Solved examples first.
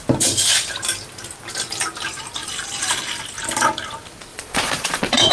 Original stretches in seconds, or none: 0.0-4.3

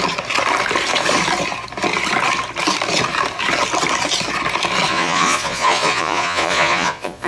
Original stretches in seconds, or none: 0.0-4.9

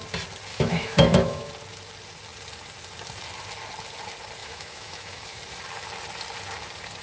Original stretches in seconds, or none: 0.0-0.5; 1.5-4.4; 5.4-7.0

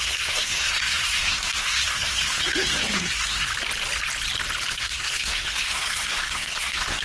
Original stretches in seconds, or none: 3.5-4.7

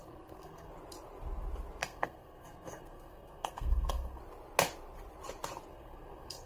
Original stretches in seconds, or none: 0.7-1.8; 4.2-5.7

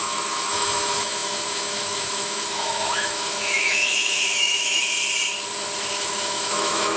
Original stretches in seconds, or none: 4.9-5.9

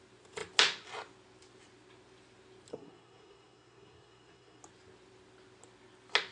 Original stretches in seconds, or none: 0.0-2.7; 4.6-6.3